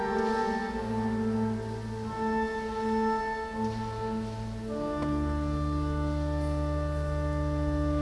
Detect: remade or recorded recorded